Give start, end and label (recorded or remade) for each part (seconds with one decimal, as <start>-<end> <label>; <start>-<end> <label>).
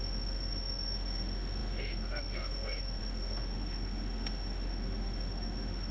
0.0-5.9 remade